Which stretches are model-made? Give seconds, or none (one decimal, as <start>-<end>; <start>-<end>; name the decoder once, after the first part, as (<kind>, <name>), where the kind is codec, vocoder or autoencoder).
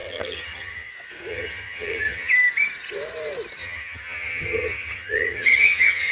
0.0-0.9 (vocoder, HiFi-GAN); 1.3-2.3; 3.6-6.1